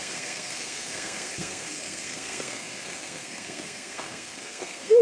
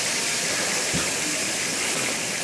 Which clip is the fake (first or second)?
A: first